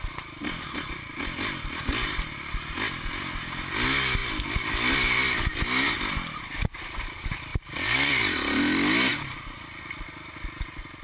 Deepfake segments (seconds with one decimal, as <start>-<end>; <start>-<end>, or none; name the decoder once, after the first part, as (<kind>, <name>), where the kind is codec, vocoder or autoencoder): 7.5-8.6 (vocoder, BigVGAN v2); 9.1-9.8